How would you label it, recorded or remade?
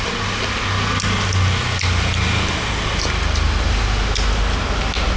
recorded